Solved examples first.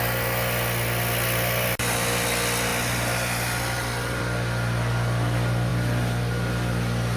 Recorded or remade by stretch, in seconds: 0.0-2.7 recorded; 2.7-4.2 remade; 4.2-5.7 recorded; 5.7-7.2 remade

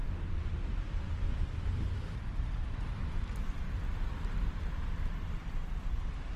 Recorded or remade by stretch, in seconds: 0.0-6.4 remade

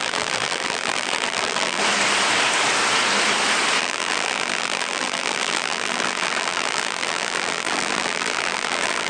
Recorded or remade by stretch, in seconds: 0.0-1.8 remade; 1.8-3.8 recorded; 3.8-9.1 remade

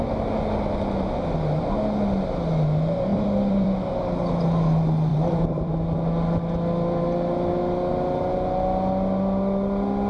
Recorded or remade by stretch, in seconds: 0.0-3.1 recorded; 3.1-3.8 remade; 3.8-5.1 recorded; 5.1-5.7 remade; 5.7-10.1 recorded

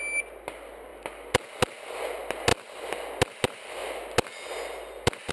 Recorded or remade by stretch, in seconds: 0.0-5.3 recorded

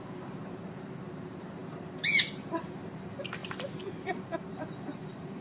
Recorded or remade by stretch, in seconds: 0.0-5.4 remade

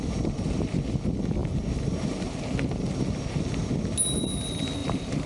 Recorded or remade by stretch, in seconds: 0.0-1.4 recorded; 1.4-3.0 remade; 3.0-4.8 recorded; 4.8-5.3 remade

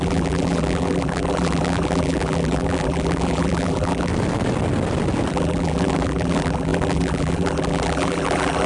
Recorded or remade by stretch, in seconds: 0.0-4.1 remade; 4.1-5.3 recorded; 5.3-8.7 remade